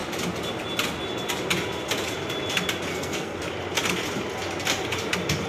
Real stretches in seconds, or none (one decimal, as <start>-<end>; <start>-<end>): 0.0-2.9; 3.4-5.5